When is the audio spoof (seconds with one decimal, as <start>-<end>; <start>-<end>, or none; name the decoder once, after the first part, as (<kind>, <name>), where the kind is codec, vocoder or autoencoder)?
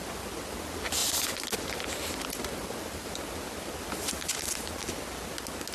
none